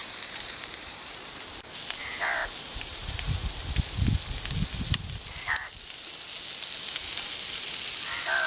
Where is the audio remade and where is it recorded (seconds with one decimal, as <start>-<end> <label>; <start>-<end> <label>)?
0.0-1.4 remade; 1.4-2.4 recorded; 2.4-3.3 remade; 3.3-8.5 recorded

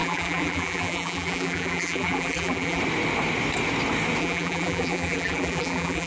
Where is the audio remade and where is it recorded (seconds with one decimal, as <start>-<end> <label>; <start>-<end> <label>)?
0.0-2.8 remade; 2.8-4.2 recorded; 4.2-6.1 remade

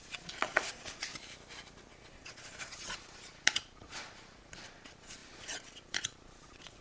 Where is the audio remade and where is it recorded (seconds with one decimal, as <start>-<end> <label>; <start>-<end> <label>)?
0.0-1.1 remade; 1.1-1.9 recorded; 1.9-6.8 remade

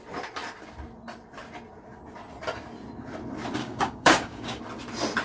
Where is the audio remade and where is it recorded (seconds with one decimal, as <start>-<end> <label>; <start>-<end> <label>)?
0.0-3.6 recorded; 3.6-4.6 remade; 4.6-5.2 recorded

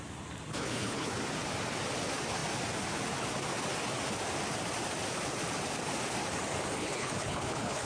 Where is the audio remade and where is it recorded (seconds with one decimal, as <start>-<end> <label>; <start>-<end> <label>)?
0.0-0.5 recorded; 0.5-1.1 remade; 1.1-6.8 recorded; 6.8-7.9 remade

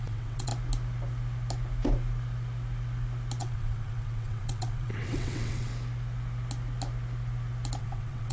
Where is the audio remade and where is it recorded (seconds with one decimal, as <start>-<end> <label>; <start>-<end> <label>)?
0.0-0.5 remade; 0.5-3.4 recorded; 3.4-5.7 remade; 5.7-7.8 recorded; 7.8-8.3 remade